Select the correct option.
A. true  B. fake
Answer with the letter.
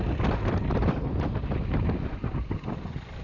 A